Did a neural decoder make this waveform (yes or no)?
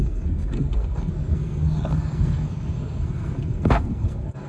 yes